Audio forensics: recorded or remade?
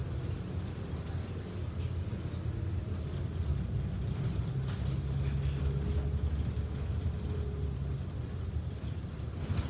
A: recorded